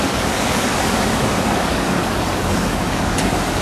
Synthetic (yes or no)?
yes